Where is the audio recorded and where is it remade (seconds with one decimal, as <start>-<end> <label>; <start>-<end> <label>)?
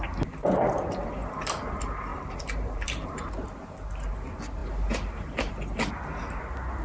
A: 0.0-1.2 recorded; 1.2-1.7 remade; 1.7-2.1 recorded; 2.1-3.8 remade; 3.8-6.8 recorded